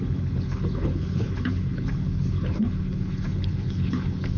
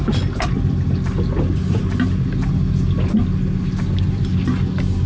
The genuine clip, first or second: second